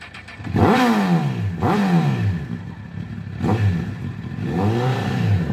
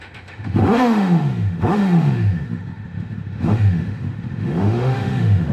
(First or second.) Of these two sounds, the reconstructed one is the second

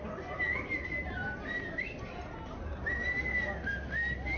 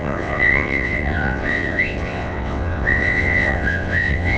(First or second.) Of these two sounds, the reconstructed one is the second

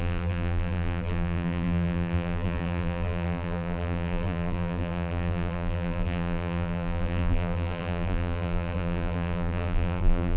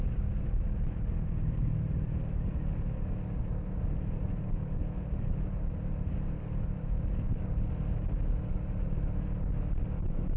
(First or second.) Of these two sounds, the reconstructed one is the first